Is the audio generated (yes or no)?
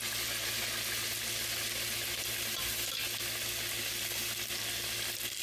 no